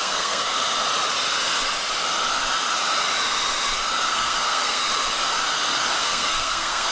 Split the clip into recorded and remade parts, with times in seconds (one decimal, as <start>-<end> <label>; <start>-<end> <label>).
0.0-0.6 remade; 0.6-4.1 recorded; 4.1-4.9 remade; 4.9-6.0 recorded; 6.0-6.9 remade